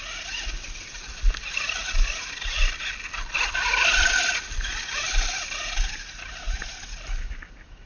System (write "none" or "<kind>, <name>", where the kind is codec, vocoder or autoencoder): none